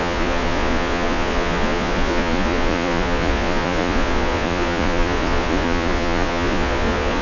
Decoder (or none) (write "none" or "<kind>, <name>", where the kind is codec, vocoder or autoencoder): vocoder, Vocos